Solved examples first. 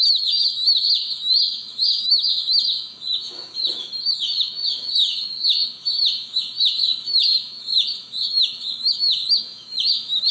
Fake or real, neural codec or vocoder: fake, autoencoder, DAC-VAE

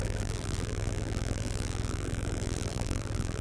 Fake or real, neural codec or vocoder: fake, vocoder, BigVGAN v2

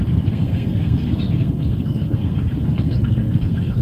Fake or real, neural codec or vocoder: fake, codec, SNAC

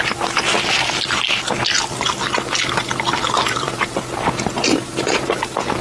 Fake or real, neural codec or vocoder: real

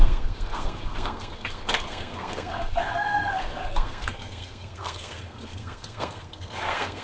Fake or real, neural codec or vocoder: fake, codec, SNAC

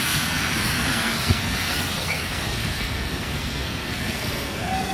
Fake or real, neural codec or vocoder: fake, codec, SNAC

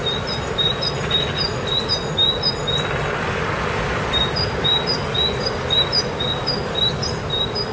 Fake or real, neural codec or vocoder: real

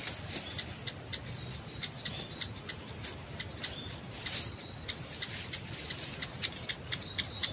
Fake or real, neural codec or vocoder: real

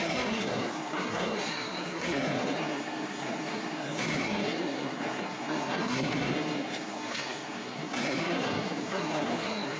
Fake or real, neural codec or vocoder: fake, codec, SNAC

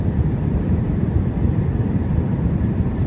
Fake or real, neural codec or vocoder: fake, vocoder, BigVGAN v2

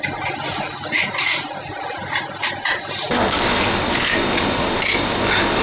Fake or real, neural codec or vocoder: real